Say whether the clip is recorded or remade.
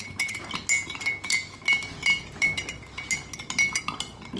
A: recorded